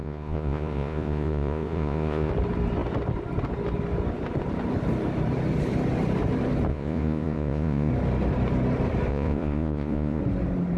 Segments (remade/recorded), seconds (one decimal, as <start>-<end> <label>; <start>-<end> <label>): 0.0-2.3 remade; 2.3-6.7 recorded; 6.7-7.9 remade; 7.9-9.1 recorded; 9.1-10.2 remade; 10.2-10.8 recorded